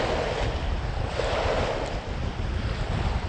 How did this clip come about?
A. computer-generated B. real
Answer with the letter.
B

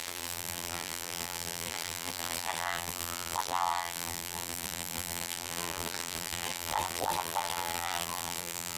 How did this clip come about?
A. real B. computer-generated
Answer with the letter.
B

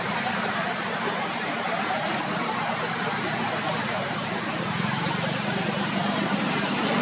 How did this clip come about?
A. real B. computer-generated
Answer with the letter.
B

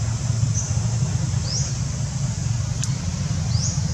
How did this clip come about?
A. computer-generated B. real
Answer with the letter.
B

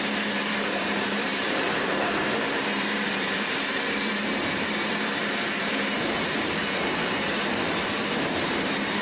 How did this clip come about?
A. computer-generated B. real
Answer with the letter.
A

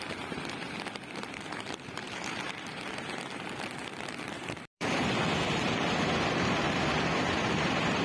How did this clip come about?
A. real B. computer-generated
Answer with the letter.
B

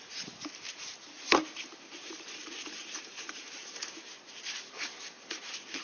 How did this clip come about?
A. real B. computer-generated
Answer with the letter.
B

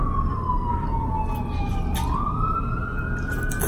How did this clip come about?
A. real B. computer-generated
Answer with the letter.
A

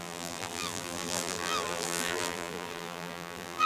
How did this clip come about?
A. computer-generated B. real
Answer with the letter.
A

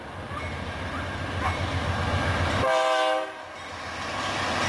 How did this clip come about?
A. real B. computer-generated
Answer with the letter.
A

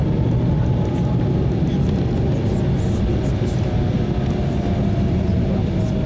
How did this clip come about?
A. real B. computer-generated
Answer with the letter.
A